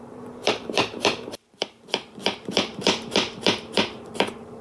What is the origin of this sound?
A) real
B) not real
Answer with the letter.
B